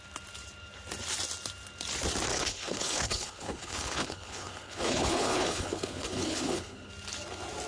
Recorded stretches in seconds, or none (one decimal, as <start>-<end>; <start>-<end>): 0.0-2.3; 6.9-7.7